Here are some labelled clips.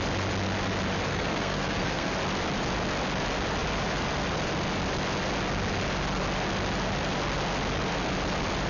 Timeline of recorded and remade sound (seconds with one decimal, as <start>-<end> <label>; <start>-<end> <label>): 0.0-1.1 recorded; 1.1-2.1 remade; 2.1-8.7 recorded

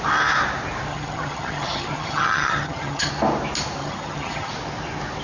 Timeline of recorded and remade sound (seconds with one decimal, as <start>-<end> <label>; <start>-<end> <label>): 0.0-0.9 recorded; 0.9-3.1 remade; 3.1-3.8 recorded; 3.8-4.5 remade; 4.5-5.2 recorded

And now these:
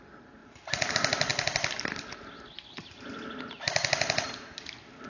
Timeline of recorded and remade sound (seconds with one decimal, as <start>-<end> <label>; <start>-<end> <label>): 0.0-0.4 recorded; 0.4-0.9 remade; 0.9-5.1 recorded

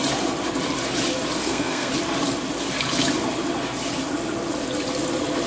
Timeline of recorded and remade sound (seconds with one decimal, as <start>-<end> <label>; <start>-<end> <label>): 0.0-1.4 recorded; 1.4-1.9 remade; 1.9-5.5 recorded

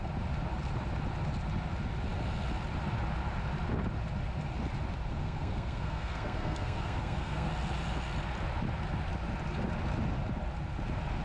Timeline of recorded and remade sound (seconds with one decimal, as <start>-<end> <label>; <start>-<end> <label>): 0.0-5.2 recorded; 5.2-7.5 remade; 7.5-11.2 recorded

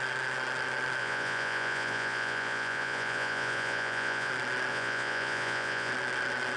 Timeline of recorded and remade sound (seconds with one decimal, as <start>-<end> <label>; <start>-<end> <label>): 0.0-1.0 recorded; 1.0-4.3 remade; 4.3-4.7 recorded; 4.7-5.9 remade; 5.9-6.6 recorded

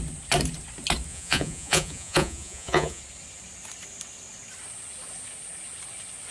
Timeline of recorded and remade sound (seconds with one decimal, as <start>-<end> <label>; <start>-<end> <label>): 0.0-1.1 recorded; 1.1-3.0 remade; 3.0-6.3 recorded

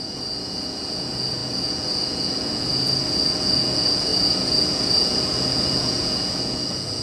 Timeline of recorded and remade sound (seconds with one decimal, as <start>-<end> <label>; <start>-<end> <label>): 0.0-7.0 remade